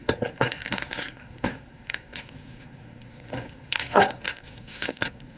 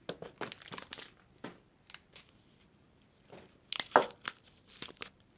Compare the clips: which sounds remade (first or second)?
first